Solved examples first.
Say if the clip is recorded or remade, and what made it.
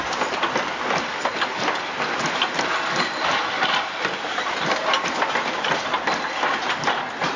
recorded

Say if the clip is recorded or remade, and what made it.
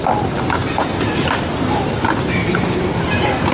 recorded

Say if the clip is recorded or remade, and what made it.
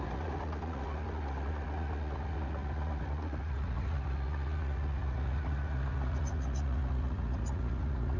remade, vocoder, Vocos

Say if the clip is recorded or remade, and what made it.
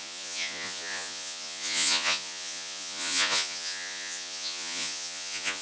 remade, vocoder, Vocos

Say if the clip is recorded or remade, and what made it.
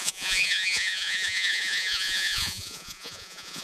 remade, vocoder, Vocos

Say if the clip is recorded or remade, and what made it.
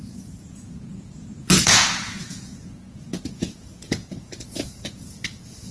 remade, vocoder, Vocos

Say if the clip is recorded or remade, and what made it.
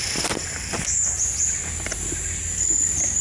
recorded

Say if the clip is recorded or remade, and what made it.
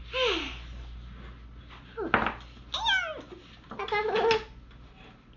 recorded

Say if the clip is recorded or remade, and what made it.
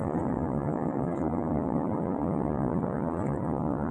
remade, vocoder, Vocos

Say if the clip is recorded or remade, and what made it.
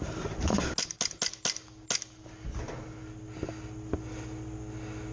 recorded